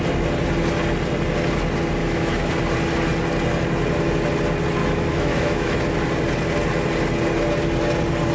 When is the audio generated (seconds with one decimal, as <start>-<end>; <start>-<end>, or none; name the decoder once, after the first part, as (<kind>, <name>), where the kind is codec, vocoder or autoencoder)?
2.0-2.5 (autoencoder, DAC-VAE); 4.8-5.8